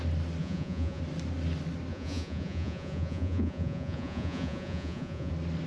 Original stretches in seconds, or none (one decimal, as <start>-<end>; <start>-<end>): 0.0-0.4; 1.0-1.9; 5.3-5.7